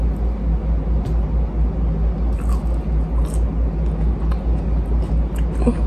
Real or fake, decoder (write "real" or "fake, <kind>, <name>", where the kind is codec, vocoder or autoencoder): real